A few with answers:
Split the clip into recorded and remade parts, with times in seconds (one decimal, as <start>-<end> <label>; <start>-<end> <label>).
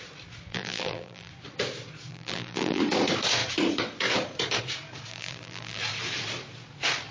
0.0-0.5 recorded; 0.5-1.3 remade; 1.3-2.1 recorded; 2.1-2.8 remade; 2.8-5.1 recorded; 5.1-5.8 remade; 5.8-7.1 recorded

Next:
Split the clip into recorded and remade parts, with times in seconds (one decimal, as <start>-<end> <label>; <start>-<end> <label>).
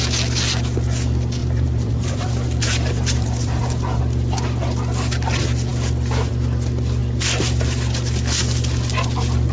0.0-1.4 recorded; 1.4-4.0 remade; 4.0-9.5 recorded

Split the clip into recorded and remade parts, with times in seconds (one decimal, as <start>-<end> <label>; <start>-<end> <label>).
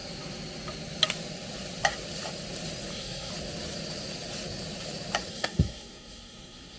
0.0-2.9 recorded; 2.9-3.3 remade; 3.3-5.3 recorded; 5.3-6.8 remade